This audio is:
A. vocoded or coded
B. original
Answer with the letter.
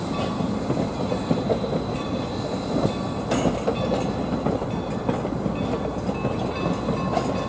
B